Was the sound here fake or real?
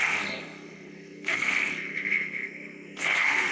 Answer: fake